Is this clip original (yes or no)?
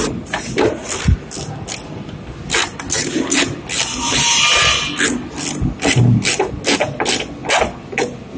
yes